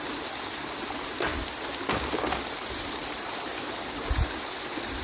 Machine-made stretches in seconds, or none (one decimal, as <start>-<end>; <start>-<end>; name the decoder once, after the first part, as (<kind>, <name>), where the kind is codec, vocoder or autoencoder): none